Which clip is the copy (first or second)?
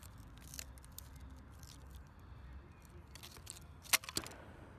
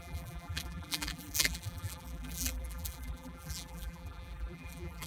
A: second